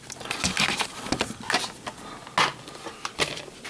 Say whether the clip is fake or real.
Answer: real